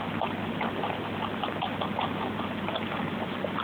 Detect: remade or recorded recorded